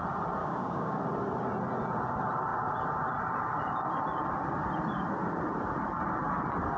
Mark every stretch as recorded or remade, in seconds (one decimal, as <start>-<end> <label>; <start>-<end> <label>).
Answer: 0.0-0.4 recorded; 0.4-1.0 remade; 1.0-6.8 recorded